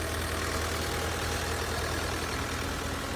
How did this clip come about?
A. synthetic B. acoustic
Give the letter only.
B